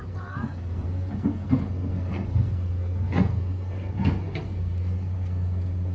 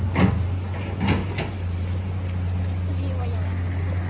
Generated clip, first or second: first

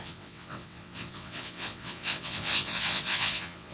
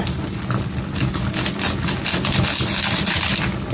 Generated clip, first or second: first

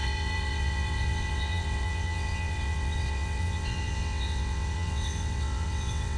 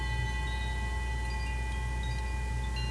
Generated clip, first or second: first